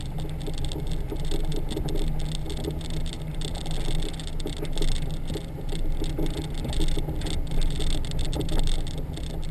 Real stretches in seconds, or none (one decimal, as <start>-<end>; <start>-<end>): 0.0-9.5